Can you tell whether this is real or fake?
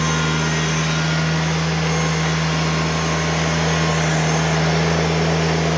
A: real